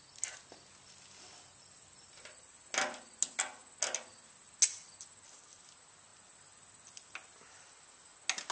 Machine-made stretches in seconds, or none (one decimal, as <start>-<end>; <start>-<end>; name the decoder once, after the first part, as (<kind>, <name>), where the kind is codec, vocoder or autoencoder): none